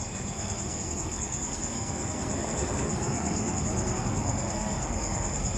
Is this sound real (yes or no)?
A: no